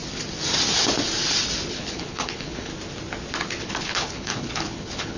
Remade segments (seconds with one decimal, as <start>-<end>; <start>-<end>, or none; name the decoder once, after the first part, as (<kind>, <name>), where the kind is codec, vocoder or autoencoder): 1.7-2.7 (codec, HILCodec); 3.6-5.2